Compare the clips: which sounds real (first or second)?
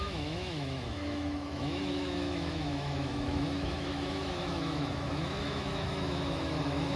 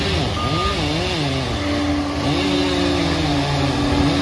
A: second